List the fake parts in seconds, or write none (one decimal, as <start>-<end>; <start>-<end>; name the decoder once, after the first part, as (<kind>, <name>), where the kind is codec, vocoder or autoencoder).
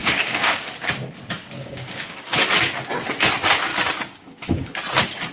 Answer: 0.0-0.7 (codec, DAC); 1.6-2.4; 3.7-4.7